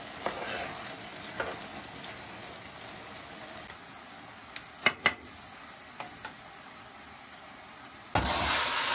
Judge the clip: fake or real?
real